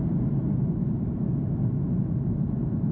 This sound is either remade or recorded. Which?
recorded